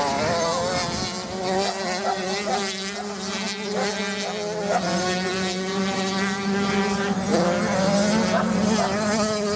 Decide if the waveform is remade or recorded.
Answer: recorded